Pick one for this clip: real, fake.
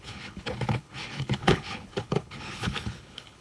fake